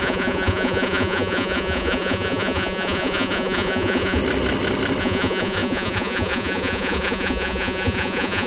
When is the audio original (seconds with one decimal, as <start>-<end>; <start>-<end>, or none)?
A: 4.2-5.0